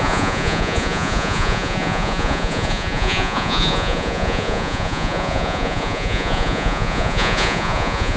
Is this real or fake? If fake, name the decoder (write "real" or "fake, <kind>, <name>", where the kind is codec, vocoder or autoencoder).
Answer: fake, vocoder, Vocos